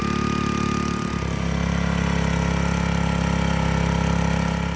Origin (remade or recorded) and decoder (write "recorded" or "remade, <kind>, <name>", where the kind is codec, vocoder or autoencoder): recorded